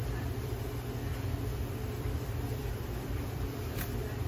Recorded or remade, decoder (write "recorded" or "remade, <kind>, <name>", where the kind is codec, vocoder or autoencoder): remade, vocoder, BigVGAN v2